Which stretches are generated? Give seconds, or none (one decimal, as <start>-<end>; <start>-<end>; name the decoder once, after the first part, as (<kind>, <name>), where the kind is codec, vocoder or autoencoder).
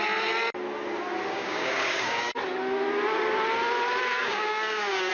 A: 1.3-2.3 (codec, DAC); 4.2-5.1